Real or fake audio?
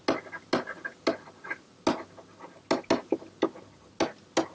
real